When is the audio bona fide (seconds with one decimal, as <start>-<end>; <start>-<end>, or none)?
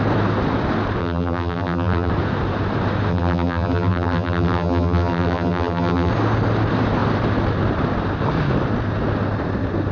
0.0-1.0; 2.1-3.1; 6.1-9.9